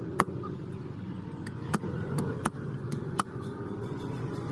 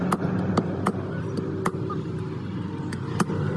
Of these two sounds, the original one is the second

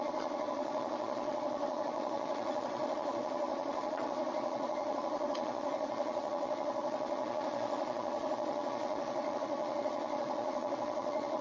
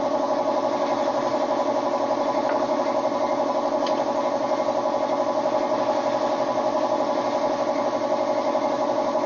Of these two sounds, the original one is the second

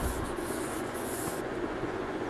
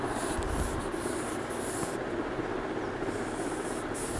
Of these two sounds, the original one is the second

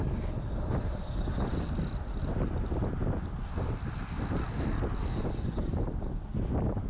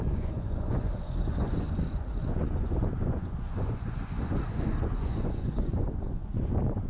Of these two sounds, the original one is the first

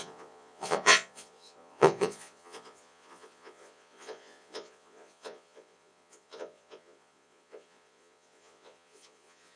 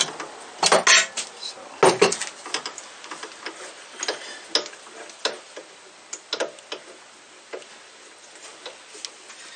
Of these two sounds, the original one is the second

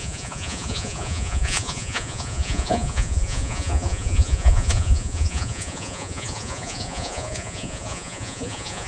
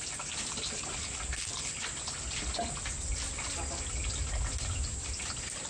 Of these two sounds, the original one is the second